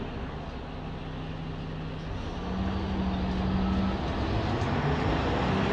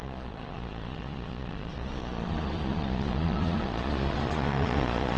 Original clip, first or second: first